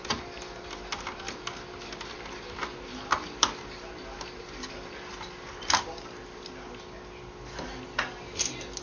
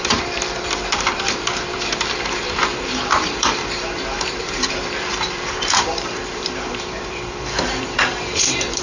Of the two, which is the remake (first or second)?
second